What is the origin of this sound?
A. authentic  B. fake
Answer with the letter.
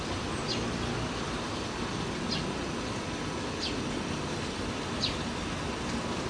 A